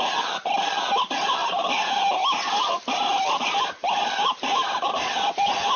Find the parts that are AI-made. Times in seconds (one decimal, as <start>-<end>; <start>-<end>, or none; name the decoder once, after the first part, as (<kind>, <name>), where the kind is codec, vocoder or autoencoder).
1.4-4.9 (vocoder, BigVGAN v2)